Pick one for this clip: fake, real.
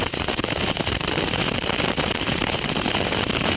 fake